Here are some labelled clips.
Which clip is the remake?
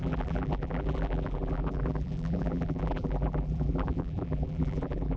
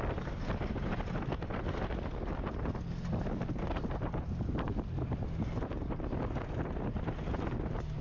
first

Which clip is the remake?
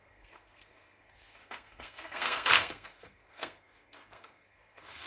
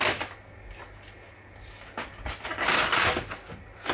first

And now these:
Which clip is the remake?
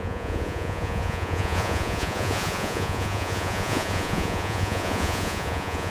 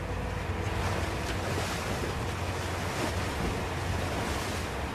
first